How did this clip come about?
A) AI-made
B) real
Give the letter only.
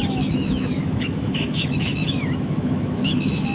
A